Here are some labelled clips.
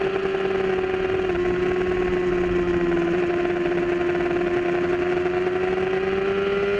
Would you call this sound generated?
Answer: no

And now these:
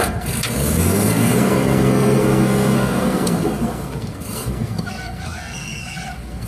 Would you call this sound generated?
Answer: yes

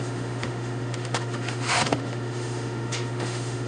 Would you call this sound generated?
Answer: yes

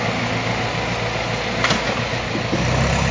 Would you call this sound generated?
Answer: no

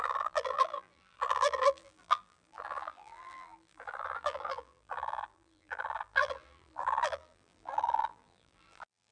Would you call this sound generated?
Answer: yes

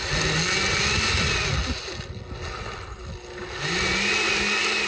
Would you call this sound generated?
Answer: no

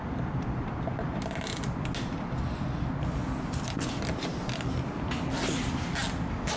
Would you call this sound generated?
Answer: no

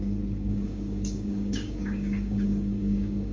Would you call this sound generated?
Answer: yes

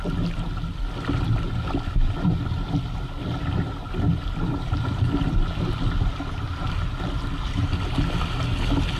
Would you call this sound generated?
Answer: no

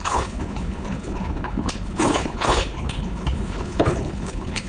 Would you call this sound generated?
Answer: yes